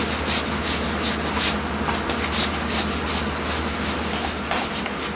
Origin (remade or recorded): recorded